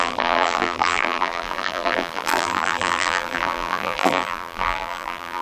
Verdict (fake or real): fake